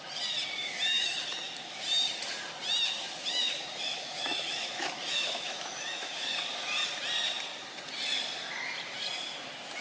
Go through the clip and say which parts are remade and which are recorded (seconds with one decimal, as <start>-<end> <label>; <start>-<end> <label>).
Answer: 0.0-0.9 recorded; 0.9-1.8 remade; 1.8-3.3 recorded; 3.3-6.4 remade; 6.4-9.8 recorded